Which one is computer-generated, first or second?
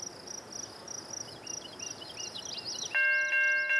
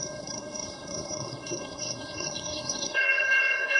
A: second